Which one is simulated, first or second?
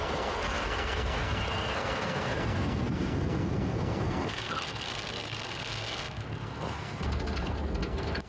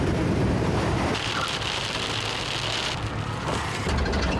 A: first